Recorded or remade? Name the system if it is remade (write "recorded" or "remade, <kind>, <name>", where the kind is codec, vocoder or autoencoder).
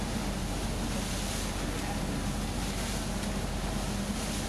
recorded